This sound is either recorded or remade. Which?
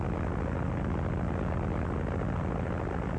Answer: recorded